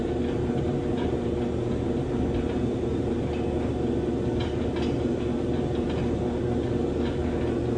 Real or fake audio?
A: real